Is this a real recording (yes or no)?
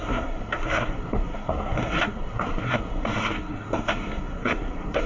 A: no